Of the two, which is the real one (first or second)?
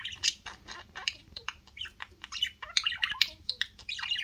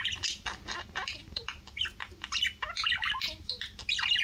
second